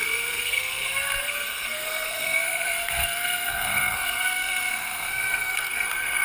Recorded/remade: remade